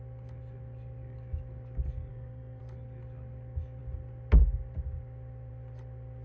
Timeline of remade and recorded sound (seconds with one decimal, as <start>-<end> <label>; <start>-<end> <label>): 0.0-2.1 recorded; 2.1-2.6 remade; 2.6-6.2 recorded

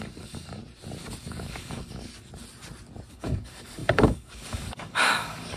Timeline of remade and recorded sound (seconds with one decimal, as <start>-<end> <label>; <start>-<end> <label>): 0.0-0.6 remade; 0.6-1.2 recorded; 1.2-2.1 remade; 2.1-3.1 recorded; 3.1-5.6 remade

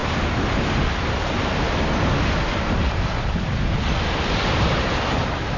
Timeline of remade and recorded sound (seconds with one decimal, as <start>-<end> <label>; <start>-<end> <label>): 0.0-5.6 recorded

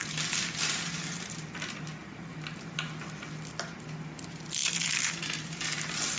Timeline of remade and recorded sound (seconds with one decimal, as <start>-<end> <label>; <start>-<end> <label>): 0.0-6.2 recorded

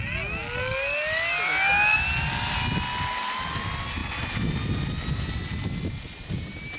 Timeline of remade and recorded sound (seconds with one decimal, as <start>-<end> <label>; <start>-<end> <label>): 0.0-6.8 recorded

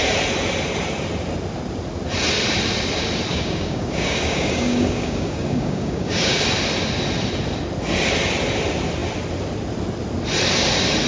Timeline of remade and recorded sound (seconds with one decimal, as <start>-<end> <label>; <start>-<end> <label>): 0.0-3.3 recorded; 3.3-6.4 remade; 6.4-11.1 recorded

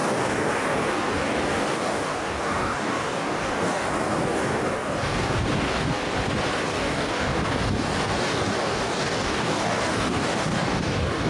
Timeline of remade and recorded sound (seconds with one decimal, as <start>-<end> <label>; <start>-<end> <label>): 0.0-6.0 remade; 6.0-6.6 recorded; 6.6-11.3 remade